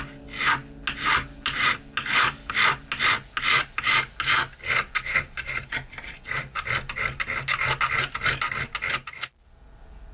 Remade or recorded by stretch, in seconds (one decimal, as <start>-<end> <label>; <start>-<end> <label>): 0.0-2.0 recorded; 2.0-2.6 remade; 2.6-10.1 recorded